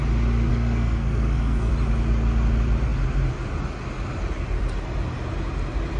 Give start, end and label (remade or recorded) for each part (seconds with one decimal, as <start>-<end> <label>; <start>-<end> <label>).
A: 0.0-0.5 recorded; 0.5-1.7 remade; 1.7-6.0 recorded